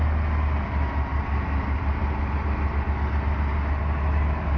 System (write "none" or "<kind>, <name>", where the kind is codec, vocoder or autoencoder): none